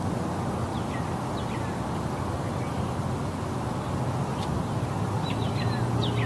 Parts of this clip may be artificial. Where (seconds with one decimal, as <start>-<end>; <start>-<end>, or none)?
none